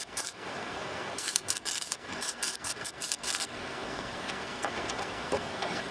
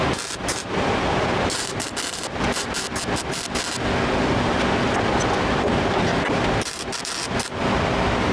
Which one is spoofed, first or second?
first